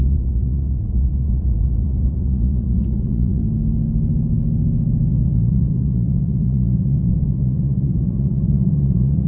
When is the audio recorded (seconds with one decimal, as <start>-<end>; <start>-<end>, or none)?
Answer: 3.4-5.1